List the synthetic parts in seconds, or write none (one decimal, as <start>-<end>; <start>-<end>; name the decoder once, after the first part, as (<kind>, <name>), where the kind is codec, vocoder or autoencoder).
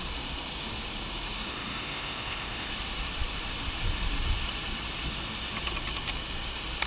1.5-2.7 (codec, ZipCodec)